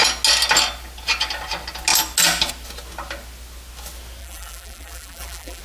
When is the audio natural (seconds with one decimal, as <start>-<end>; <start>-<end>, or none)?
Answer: 0.0-4.2